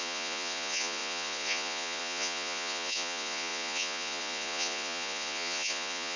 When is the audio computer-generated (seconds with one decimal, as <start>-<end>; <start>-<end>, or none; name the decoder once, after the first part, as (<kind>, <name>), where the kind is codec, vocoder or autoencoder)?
0.0-6.2 (vocoder, Vocos)